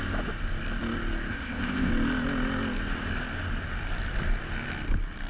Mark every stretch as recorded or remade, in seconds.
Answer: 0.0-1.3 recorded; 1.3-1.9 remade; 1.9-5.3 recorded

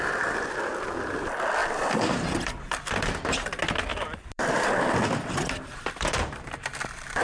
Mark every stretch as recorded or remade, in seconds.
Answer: 0.0-1.6 recorded; 1.6-3.1 remade; 3.1-3.9 recorded; 3.9-7.2 remade

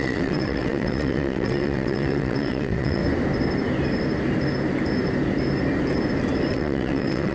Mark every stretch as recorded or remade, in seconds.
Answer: 0.0-3.0 remade; 3.0-6.5 recorded; 6.5-7.3 remade

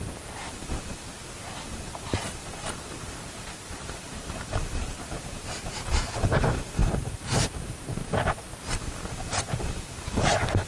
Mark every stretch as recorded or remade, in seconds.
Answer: 0.0-0.9 remade; 0.9-2.9 recorded; 2.9-10.7 remade

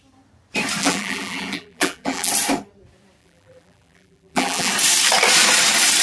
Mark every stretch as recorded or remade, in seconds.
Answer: 0.0-0.8 recorded; 0.8-2.3 remade; 2.3-3.2 recorded; 3.2-4.7 remade; 4.7-6.0 recorded

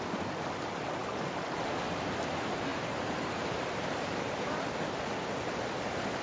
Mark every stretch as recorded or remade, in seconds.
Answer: 0.0-2.7 recorded; 2.7-5.1 remade; 5.1-6.2 recorded